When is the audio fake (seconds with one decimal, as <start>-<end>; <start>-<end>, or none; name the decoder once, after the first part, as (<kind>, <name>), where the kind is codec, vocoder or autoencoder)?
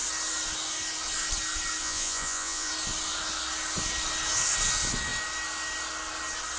1.8-2.7 (vocoder, Vocos)